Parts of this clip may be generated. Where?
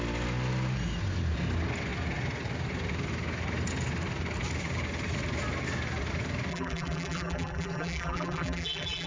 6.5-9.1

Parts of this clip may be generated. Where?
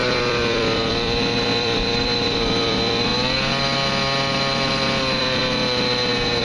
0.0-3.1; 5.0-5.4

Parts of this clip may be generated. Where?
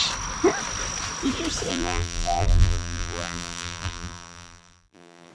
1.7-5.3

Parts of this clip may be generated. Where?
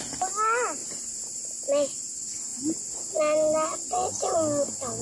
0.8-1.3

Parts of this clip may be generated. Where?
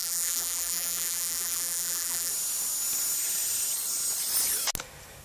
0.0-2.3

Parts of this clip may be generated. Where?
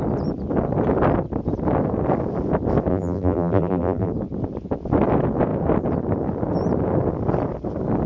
2.9-4.1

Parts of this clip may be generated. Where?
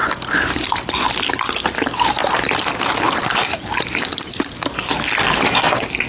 0.0-1.3